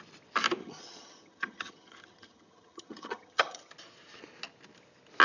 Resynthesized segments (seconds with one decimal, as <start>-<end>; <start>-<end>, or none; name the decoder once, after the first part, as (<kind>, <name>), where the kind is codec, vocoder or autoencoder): 0.6-3.7 (vocoder, HiFi-GAN)